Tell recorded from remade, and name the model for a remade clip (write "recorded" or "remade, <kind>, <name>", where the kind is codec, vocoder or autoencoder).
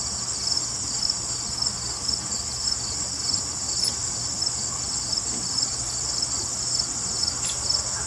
recorded